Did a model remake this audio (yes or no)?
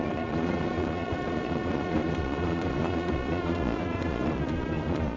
yes